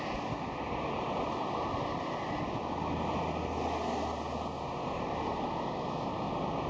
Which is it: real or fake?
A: real